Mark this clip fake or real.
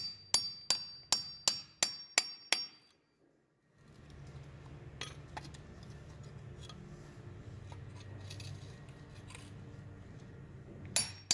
real